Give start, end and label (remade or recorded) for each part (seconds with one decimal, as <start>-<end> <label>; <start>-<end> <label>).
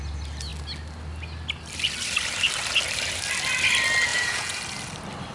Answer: 0.0-4.1 recorded; 4.1-4.6 remade; 4.6-5.3 recorded